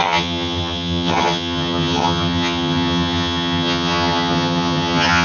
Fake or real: fake